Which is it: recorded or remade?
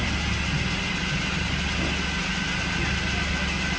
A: recorded